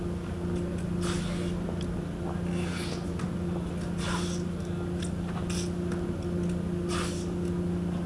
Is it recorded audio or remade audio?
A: recorded